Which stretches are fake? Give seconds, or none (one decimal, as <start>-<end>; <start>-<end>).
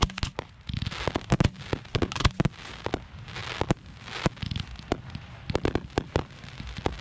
none